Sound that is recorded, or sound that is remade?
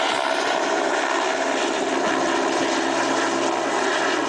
recorded